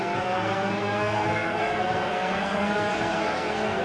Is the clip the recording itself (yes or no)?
no